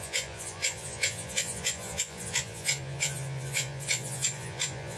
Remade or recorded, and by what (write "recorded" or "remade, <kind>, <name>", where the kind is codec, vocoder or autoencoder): remade, vocoder, Vocos